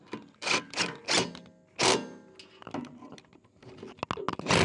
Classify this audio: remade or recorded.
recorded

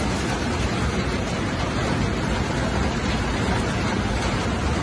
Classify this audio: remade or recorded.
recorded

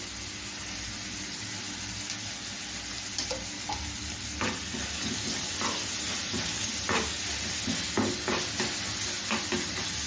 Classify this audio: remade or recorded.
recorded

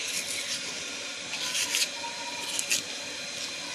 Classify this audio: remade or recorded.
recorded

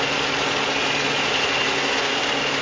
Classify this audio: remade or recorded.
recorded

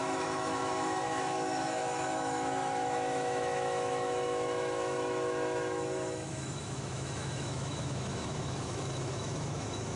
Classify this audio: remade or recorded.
remade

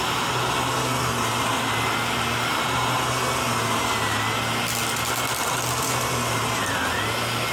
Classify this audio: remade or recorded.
recorded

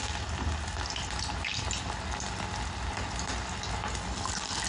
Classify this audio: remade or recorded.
recorded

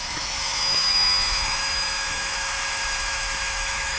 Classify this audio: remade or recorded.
remade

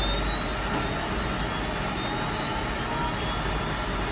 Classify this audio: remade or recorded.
recorded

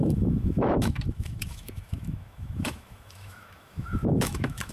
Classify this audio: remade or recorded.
remade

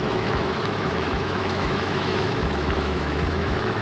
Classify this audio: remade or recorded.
remade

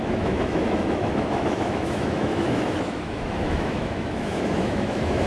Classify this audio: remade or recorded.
remade